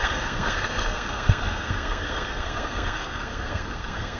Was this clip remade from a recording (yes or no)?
yes